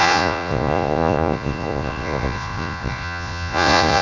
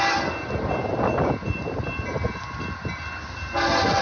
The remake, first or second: first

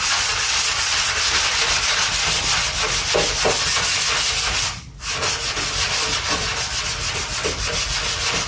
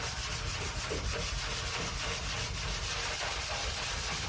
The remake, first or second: second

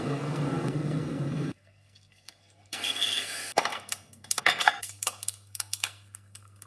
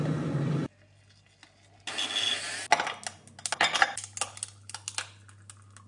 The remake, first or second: first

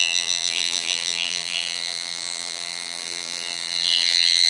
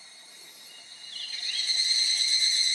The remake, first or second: first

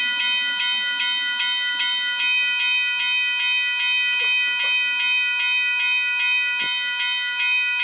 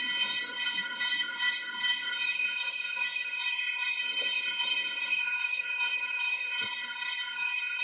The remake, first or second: second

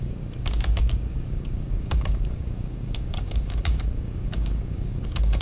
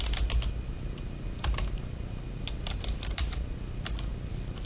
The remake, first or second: first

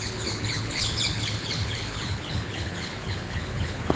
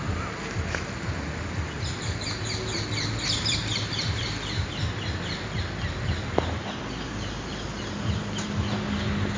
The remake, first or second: first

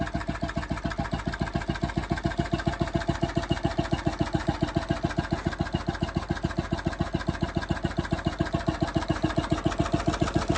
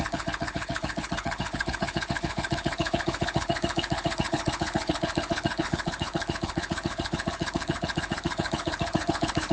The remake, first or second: second